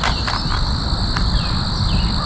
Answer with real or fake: real